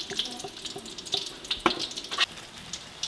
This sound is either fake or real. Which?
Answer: real